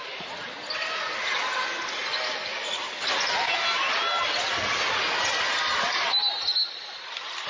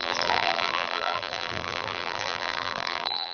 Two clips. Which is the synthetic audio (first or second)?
second